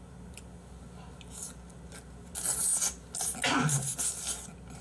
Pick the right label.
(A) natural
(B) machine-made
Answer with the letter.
A